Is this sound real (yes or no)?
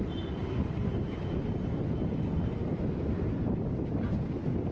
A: yes